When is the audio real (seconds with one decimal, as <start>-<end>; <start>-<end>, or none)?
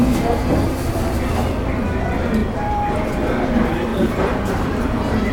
0.0-2.4; 3.1-3.9